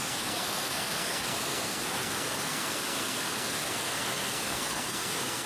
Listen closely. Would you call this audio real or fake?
fake